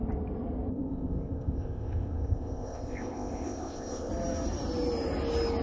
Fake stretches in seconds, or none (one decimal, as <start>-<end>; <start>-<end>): 0.7-4.1